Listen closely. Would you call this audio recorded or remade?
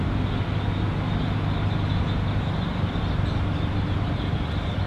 recorded